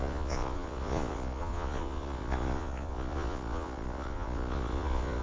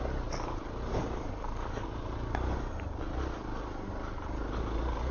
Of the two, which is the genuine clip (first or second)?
second